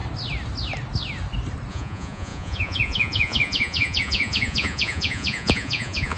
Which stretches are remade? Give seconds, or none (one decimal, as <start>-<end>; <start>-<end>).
1.7-6.2